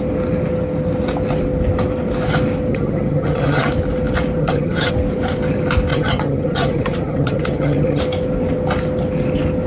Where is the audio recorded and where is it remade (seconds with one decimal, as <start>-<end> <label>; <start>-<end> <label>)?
0.0-2.7 recorded; 2.7-3.7 remade; 3.7-4.4 recorded; 4.4-4.9 remade; 4.9-5.9 recorded; 5.9-8.0 remade; 8.0-9.7 recorded